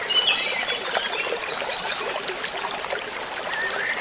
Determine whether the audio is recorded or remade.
recorded